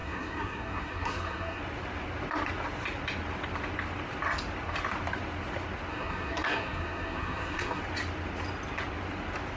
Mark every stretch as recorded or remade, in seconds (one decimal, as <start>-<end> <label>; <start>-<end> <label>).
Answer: 0.0-1.6 remade; 1.6-5.9 recorded; 5.9-7.8 remade; 7.8-9.6 recorded